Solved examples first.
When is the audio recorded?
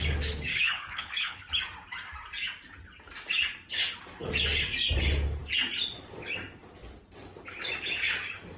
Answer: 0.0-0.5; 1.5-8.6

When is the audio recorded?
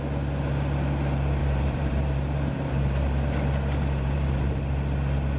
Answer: 0.0-1.4; 4.6-5.4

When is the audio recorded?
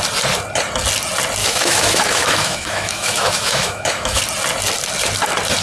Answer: 0.0-1.4; 4.2-5.6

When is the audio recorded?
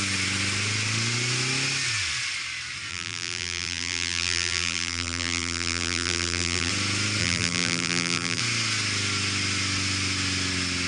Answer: 0.0-2.9; 6.7-7.2; 8.4-10.9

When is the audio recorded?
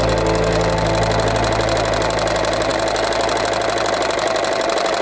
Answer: 0.0-5.0